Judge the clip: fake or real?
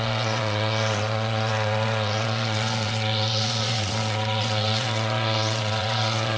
fake